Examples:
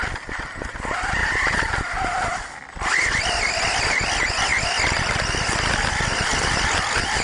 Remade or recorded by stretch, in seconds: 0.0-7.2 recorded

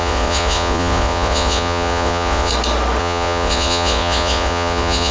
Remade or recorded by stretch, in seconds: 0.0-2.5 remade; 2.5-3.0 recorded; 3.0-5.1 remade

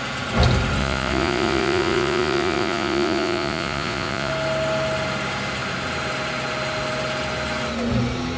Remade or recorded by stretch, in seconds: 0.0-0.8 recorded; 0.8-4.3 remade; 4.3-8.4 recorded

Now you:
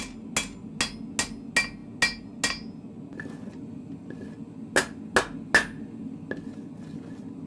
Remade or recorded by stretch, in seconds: 0.0-7.5 recorded